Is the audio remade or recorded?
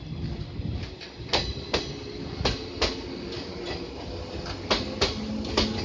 recorded